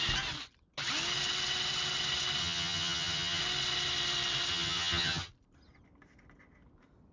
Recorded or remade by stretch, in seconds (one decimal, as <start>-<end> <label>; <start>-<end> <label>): 0.0-2.4 recorded; 2.4-3.4 remade; 3.4-4.5 recorded; 4.5-5.3 remade; 5.3-7.1 recorded